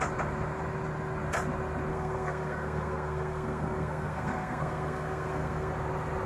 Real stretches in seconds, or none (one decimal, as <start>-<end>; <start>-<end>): 0.0-1.9; 5.7-6.3